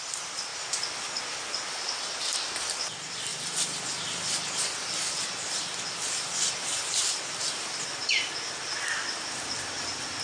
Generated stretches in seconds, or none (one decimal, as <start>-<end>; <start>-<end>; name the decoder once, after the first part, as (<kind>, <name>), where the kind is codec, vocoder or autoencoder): 0.0-0.5 (vocoder, BigVGAN v2); 1.2-8.0; 8.6-10.2